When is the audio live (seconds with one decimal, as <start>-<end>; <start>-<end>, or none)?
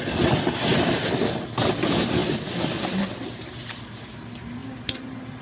0.0-5.4